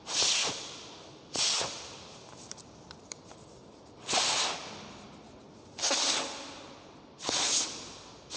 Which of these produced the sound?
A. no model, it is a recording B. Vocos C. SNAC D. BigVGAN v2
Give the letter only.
A